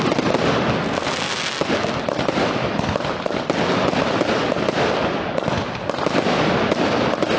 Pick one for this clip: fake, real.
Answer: real